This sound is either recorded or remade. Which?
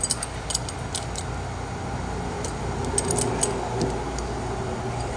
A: recorded